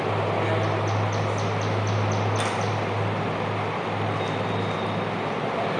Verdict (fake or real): real